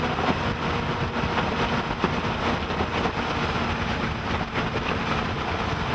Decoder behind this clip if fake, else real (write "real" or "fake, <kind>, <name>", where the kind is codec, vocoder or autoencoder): real